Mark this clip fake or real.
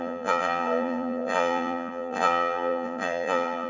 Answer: fake